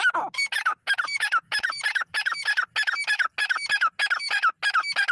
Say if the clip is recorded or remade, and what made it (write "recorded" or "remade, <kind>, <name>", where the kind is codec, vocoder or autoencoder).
recorded